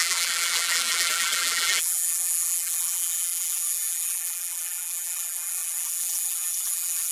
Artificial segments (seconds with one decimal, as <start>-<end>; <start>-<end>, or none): 0.0-7.1